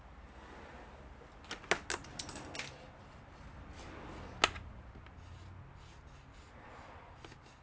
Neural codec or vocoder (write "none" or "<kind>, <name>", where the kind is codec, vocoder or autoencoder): none